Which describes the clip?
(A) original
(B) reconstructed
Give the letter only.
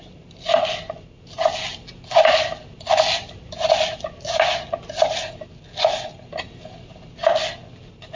A